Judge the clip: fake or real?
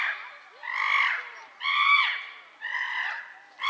real